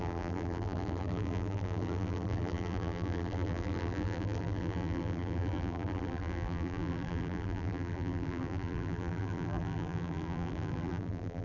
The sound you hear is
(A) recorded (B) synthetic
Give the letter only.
B